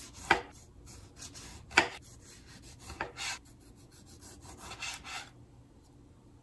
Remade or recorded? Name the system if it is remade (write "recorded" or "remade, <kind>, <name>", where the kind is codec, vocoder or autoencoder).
recorded